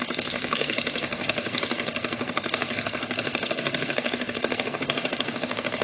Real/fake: fake